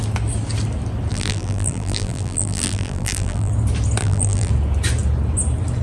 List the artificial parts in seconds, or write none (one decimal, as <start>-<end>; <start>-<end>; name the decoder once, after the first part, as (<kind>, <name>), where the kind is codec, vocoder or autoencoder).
1.1-3.5 (vocoder, BigVGAN v2); 4.0-4.5